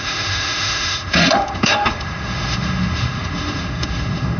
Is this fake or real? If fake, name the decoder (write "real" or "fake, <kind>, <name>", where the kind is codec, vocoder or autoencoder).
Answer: fake, autoencoder, DAC-VAE